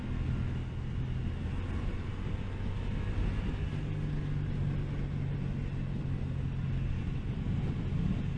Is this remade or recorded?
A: recorded